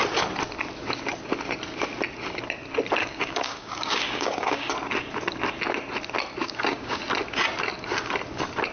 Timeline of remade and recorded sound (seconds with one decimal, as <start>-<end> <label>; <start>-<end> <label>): 0.0-3.0 recorded; 3.0-4.7 remade; 4.7-6.4 recorded; 6.4-7.0 remade; 7.0-8.7 recorded